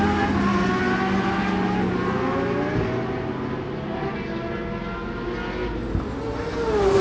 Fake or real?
real